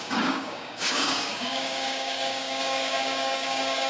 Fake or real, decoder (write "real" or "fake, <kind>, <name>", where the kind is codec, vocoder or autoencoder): fake, codec, DAC